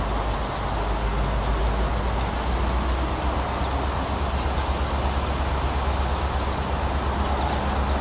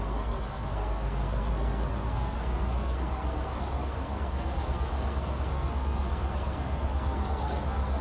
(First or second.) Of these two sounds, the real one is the first